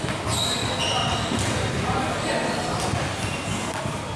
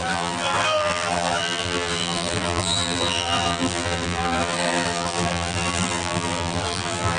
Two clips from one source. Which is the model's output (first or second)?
second